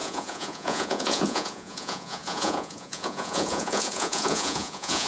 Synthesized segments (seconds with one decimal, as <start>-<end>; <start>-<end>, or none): 0.0-5.1